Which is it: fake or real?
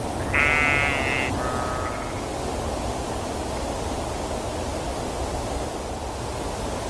real